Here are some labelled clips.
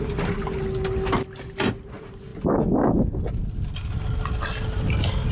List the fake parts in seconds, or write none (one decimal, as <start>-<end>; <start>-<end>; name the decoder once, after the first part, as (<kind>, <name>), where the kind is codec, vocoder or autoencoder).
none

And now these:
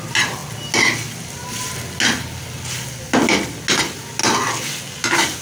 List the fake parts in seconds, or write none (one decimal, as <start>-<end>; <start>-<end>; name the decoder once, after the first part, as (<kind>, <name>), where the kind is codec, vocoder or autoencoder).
none

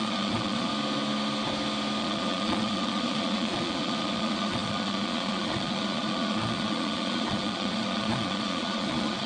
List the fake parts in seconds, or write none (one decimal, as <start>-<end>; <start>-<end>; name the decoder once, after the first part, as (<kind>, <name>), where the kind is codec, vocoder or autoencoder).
0.0-0.7 (vocoder, Vocos); 2.0-9.3

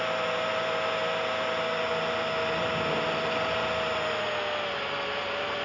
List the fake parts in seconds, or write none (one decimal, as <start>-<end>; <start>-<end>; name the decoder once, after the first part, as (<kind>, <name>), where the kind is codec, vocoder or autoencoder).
none

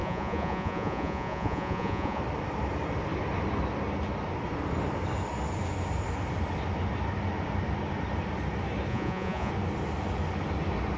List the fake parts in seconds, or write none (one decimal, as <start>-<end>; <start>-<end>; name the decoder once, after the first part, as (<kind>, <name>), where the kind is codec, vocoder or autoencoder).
0.0-2.2 (vocoder, Vocos); 8.9-9.5

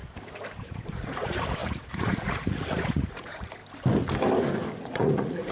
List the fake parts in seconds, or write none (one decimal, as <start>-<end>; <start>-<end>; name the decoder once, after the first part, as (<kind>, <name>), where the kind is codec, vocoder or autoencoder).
0.6-3.6 (vocoder, Vocos); 4.8-5.5

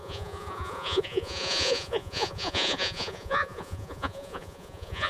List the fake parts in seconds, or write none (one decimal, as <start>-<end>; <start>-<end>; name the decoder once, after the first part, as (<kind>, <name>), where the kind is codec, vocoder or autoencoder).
0.0-5.1 (vocoder, Vocos)

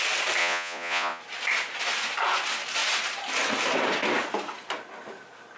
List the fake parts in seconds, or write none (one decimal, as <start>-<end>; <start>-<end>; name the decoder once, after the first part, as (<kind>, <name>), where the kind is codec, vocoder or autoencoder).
0.4-1.2 (vocoder, Vocos)